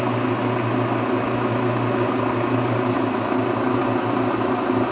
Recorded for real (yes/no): yes